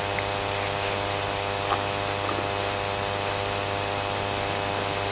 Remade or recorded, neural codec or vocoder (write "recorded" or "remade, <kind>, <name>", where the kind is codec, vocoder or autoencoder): recorded